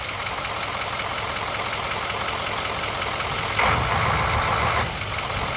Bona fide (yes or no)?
yes